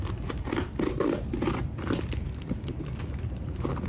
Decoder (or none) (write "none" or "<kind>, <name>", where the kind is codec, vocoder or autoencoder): none